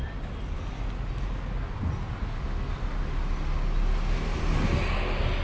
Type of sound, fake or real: real